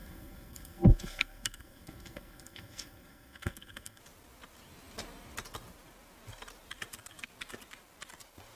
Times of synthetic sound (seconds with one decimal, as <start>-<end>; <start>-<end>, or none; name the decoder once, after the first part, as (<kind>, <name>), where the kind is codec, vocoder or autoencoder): 0.0-4.0 (codec, SNAC)